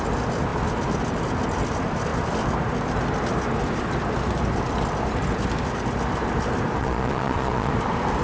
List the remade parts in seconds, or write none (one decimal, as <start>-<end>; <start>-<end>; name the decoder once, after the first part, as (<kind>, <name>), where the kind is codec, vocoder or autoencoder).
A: 6.8-7.7 (vocoder, Vocos)